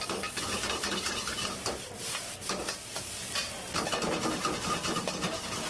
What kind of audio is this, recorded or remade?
recorded